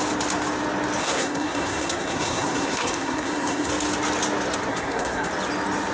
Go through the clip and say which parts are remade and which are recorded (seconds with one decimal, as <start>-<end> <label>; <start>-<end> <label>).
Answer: 0.0-1.0 recorded; 1.0-3.7 remade; 3.7-4.7 recorded; 4.7-5.3 remade; 5.3-5.9 recorded